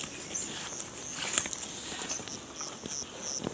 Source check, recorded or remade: recorded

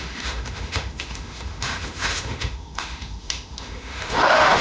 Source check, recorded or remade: remade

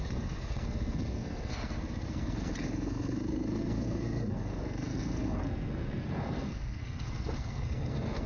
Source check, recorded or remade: remade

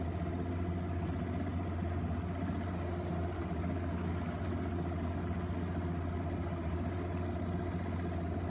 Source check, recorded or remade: recorded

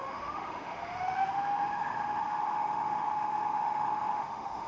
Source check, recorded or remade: remade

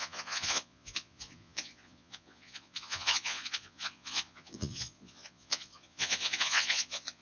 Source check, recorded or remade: remade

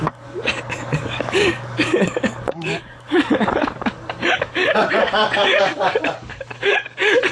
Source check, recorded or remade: remade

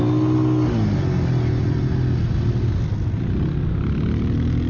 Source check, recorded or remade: recorded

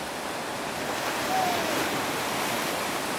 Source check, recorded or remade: recorded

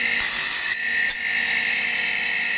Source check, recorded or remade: recorded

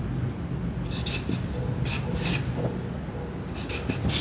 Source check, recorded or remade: recorded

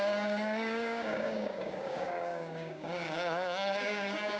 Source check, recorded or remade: remade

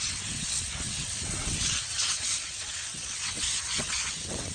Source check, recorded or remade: remade